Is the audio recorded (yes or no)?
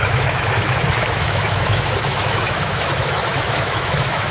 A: no